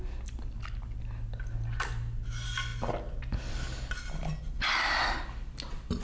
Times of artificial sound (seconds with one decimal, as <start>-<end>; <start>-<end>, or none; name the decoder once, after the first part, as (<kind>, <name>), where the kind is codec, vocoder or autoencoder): none